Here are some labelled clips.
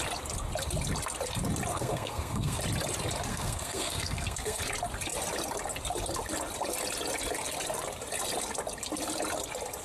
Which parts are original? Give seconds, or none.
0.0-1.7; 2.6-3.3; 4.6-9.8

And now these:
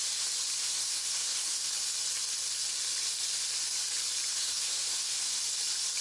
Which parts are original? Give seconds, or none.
0.0-0.6; 1.7-4.3; 5.4-6.0

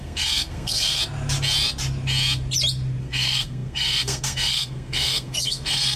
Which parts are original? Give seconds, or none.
1.0-3.0

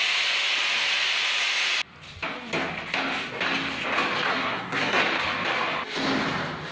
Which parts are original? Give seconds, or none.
0.0-4.3; 5.0-6.7

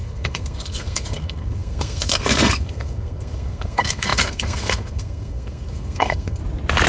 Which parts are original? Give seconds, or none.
6.4-6.9